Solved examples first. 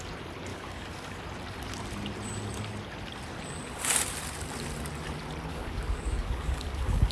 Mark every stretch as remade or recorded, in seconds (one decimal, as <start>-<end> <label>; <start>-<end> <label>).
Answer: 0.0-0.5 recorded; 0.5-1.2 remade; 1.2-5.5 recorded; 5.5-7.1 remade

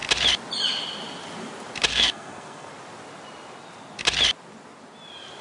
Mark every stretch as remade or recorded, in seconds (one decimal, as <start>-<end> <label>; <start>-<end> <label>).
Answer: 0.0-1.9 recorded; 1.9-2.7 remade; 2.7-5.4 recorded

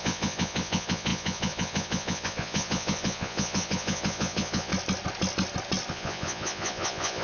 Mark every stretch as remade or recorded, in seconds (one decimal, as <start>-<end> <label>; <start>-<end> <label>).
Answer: 0.0-4.7 remade; 4.7-5.9 recorded; 5.9-7.2 remade

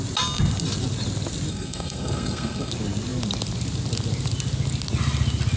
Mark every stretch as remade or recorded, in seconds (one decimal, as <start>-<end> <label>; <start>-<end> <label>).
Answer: 0.0-1.5 recorded; 1.5-2.7 remade; 2.7-5.6 recorded

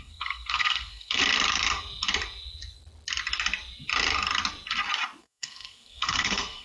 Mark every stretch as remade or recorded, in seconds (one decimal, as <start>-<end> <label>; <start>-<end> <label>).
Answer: 0.0-1.2 remade; 1.2-5.2 recorded; 5.2-6.6 remade

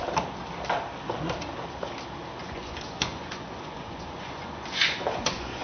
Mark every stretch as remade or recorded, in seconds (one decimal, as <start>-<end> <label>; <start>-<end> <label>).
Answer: 0.0-2.4 recorded; 2.4-5.6 remade

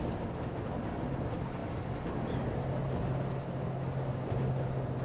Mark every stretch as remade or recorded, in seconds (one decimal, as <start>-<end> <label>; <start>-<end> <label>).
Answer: 0.0-5.0 recorded